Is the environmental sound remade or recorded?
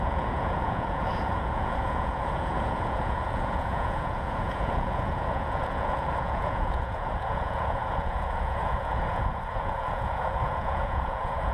remade